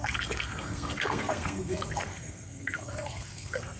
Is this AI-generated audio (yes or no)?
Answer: yes